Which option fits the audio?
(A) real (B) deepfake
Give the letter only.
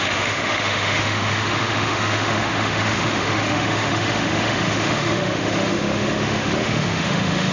B